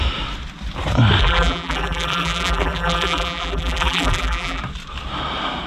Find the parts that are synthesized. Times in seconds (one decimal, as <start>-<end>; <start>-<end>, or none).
1.2-4.6